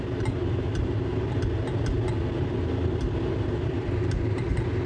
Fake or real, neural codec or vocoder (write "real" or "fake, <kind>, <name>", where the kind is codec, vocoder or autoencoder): real